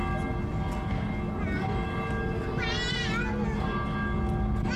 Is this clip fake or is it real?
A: real